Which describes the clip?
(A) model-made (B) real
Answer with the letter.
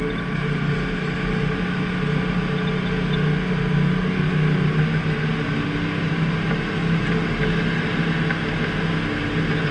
B